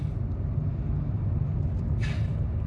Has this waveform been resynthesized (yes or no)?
no